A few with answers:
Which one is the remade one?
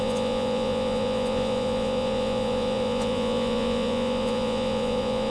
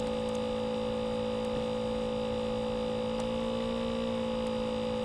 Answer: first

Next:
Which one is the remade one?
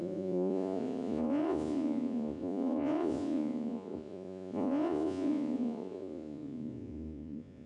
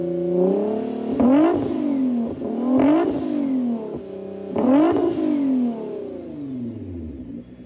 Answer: first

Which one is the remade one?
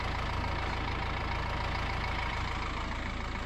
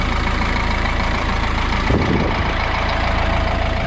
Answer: second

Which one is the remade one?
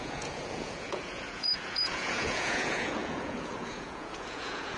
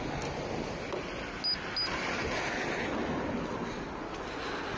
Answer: first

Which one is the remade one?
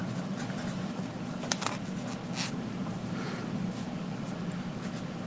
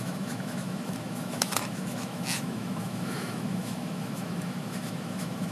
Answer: second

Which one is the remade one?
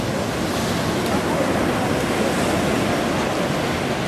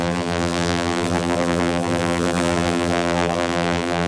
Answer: second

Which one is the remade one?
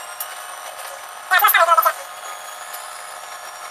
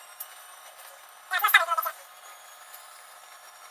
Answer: second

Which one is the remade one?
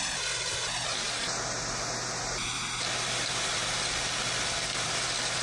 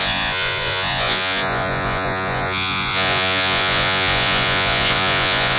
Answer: second